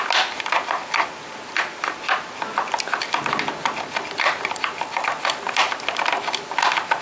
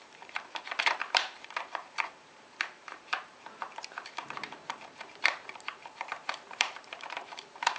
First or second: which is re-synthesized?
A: second